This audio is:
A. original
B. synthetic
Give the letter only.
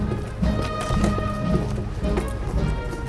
A